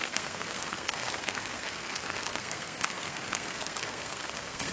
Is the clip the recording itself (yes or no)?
no